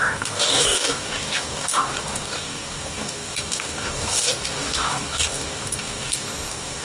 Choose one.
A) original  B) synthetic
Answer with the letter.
B